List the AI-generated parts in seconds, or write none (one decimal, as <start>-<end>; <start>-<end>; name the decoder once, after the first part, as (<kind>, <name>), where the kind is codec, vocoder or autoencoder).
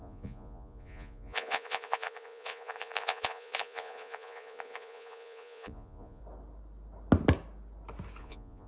0.0-6.2 (vocoder, Vocos); 8.2-8.7